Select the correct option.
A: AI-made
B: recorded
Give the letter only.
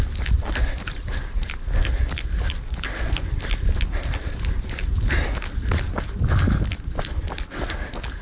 B